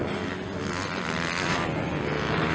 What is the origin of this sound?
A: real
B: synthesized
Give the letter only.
A